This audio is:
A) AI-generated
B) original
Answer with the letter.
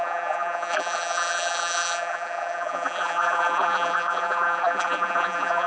A